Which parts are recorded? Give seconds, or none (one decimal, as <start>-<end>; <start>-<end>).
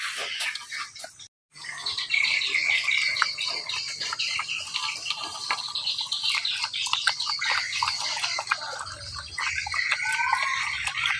0.0-1.4; 2.4-11.2